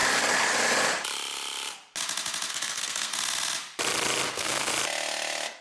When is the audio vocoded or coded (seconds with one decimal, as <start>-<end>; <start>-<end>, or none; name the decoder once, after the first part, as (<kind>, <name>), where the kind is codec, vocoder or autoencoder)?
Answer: 2.5-3.1 (codec, SNAC); 4.3-4.7